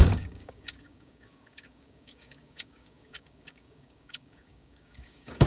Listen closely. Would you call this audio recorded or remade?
remade